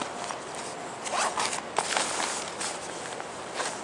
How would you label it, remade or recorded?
recorded